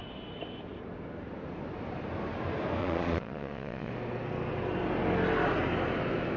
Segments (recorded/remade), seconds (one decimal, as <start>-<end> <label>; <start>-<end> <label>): 0.0-2.8 recorded; 2.8-3.9 remade; 3.9-6.4 recorded